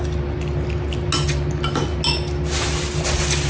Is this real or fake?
real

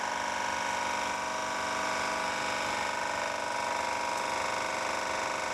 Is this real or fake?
real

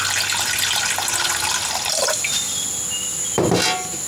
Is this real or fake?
real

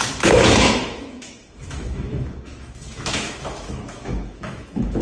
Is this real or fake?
fake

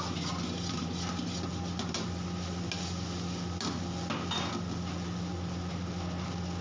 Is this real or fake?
real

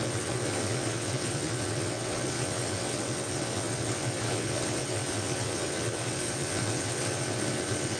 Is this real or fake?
fake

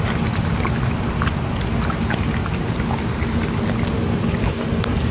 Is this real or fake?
real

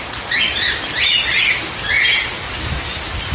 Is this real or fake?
real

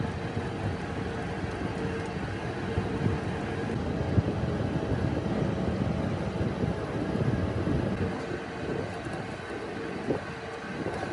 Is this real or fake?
real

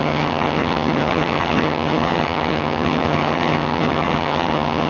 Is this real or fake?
fake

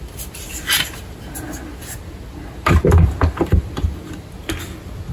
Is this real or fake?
real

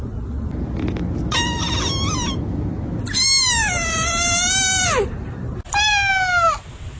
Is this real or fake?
real